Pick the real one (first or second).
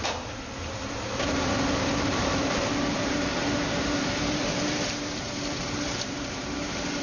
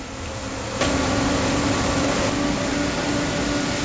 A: second